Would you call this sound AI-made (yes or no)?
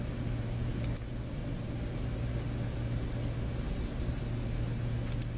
no